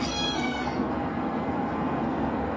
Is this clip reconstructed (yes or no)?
yes